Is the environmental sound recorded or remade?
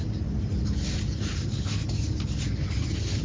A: recorded